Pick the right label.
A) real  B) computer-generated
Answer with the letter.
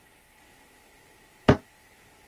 A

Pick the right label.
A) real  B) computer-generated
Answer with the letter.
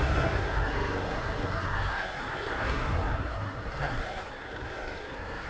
B